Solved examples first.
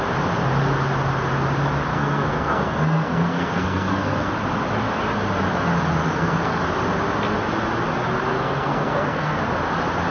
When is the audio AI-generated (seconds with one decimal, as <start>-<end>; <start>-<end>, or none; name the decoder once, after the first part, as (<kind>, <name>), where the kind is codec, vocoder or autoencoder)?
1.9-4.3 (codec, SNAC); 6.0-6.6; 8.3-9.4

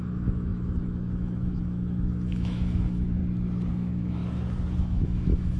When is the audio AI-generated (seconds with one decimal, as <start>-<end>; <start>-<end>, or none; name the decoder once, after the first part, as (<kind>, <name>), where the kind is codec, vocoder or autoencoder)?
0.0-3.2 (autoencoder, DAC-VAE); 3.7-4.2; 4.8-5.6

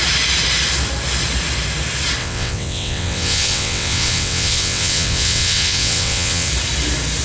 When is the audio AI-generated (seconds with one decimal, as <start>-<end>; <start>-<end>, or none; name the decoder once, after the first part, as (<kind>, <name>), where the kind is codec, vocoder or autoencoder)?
2.2-6.5 (vocoder, WaveNeXt)

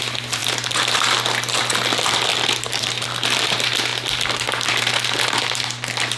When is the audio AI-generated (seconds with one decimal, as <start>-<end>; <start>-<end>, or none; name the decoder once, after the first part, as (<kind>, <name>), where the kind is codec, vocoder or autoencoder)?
2.3-2.8 (vocoder, BigVGAN v2)